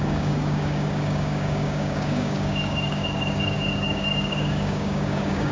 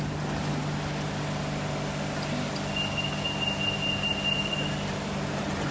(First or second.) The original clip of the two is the second